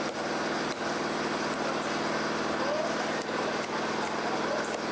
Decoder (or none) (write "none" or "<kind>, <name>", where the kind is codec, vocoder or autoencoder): none